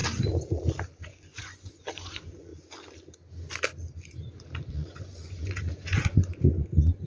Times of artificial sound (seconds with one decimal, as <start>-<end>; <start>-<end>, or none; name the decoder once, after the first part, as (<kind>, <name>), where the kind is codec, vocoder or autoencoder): 1.0-2.5 (vocoder, Vocos); 4.7-7.1